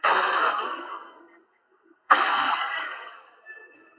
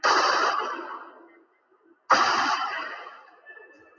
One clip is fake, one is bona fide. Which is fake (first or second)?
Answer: first